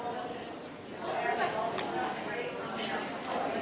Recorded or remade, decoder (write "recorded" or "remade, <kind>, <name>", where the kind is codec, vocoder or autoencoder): recorded